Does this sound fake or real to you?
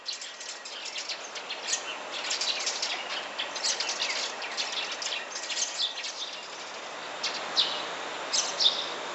real